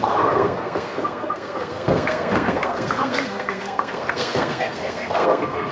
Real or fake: fake